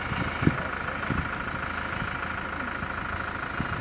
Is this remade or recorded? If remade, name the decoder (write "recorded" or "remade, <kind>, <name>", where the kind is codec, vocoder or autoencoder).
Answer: recorded